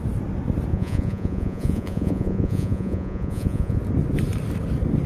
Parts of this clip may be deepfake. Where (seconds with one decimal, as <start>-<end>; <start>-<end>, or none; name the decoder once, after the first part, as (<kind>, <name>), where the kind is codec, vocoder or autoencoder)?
0.7-3.8 (vocoder, Vocos)